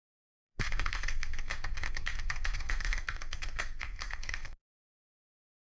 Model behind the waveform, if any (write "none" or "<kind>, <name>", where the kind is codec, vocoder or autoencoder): codec, SNAC